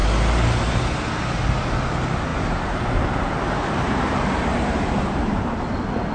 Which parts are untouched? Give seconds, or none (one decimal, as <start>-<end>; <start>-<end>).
0.0-2.3; 5.4-6.1